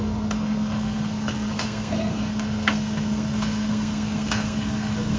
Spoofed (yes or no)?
yes